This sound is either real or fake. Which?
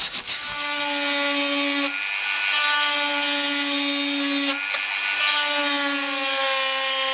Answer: real